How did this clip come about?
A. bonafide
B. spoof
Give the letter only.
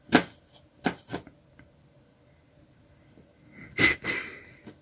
A